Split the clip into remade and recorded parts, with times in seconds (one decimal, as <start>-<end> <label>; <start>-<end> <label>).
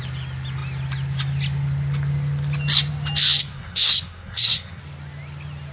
0.0-3.4 recorded; 3.4-4.8 remade; 4.8-5.7 recorded